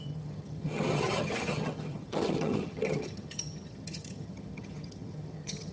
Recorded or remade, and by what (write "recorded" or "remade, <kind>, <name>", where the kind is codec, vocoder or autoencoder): remade, vocoder, HiFi-GAN